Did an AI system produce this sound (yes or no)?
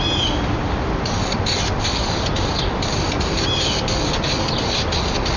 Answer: no